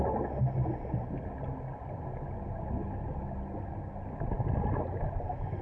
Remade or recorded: recorded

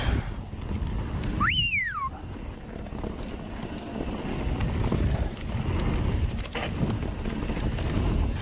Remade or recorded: recorded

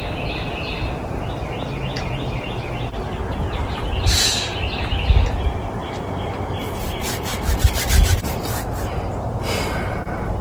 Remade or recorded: recorded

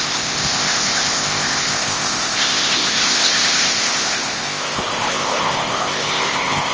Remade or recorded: remade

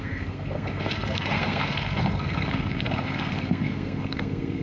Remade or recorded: remade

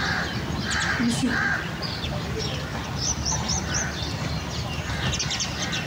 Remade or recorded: recorded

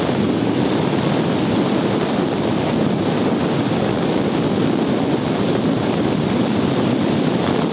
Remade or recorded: recorded